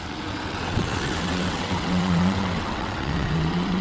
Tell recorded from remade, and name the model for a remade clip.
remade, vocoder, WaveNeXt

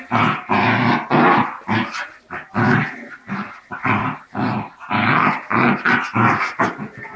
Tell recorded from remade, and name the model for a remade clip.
recorded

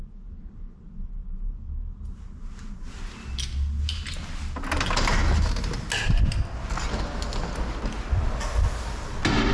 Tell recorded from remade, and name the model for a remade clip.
recorded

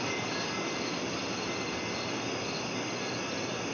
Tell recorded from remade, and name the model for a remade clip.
recorded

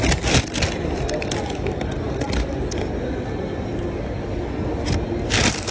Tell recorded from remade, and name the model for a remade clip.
recorded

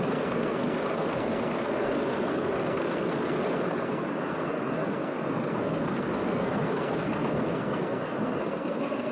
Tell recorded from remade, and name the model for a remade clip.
remade, codec, SNAC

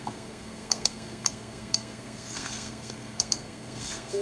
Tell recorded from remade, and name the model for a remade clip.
remade, codec, SNAC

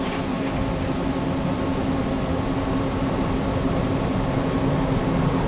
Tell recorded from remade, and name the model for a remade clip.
recorded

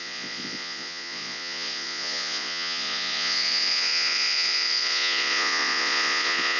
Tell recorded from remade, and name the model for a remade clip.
remade, vocoder, Vocos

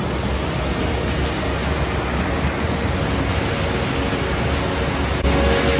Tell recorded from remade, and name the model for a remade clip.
recorded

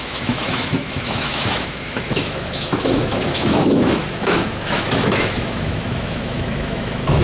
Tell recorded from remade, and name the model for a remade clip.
remade, autoencoder, DAC-VAE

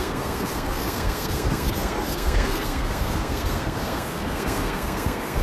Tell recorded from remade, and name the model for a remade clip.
remade, codec, SNAC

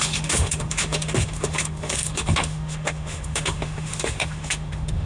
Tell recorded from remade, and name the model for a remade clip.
remade, autoencoder, DAC-VAE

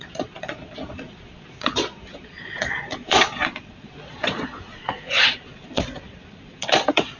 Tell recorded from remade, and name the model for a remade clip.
remade, vocoder, Vocos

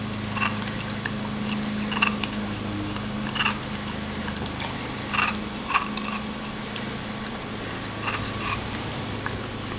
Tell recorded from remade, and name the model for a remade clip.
recorded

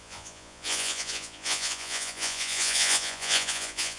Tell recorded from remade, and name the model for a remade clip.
remade, vocoder, Vocos